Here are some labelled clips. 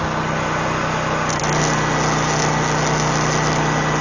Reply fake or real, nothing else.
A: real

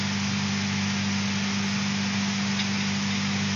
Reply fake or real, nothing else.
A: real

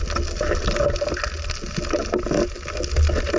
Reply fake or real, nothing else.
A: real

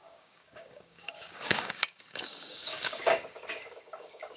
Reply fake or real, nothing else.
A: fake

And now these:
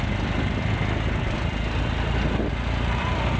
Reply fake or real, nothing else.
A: real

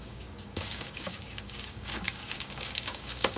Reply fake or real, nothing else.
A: fake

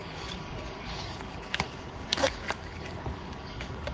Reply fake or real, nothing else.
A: fake